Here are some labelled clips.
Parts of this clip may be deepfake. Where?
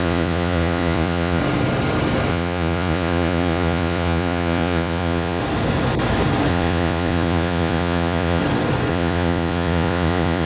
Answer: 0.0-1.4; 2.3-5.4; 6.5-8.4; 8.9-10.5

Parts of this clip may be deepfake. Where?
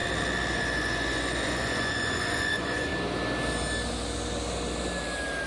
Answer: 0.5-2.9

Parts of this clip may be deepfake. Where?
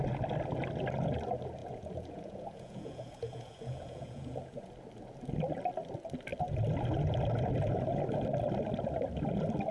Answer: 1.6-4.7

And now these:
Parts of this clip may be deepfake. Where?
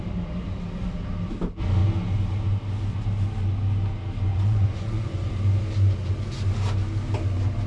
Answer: 4.3-5.3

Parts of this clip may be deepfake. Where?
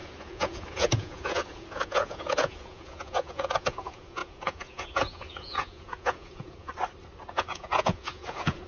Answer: 0.0-6.7; 7.3-8.7